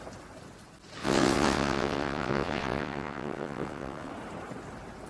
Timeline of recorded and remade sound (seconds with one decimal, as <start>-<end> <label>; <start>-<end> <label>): 0.0-1.0 recorded; 1.0-4.1 remade; 4.1-5.1 recorded